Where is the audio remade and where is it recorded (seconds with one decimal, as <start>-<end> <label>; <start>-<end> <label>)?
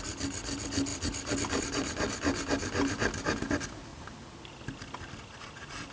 0.0-5.9 recorded